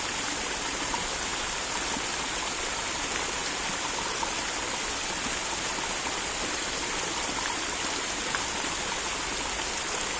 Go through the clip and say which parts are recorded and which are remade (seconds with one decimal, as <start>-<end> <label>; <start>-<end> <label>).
0.0-10.2 recorded